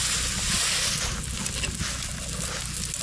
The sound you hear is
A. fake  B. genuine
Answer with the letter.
B